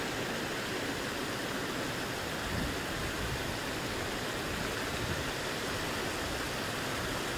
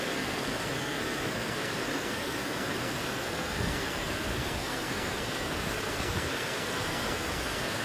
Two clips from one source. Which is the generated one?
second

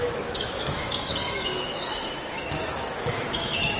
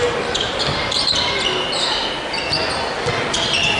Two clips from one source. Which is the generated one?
first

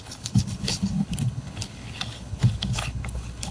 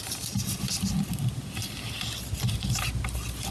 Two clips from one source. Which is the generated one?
first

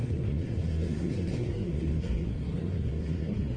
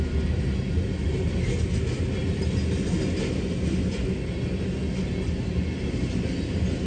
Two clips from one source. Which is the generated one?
first